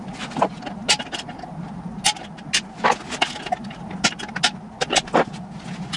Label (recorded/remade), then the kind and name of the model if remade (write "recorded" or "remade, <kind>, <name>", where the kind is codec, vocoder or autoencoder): recorded